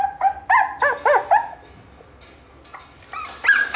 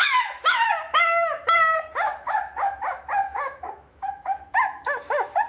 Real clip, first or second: first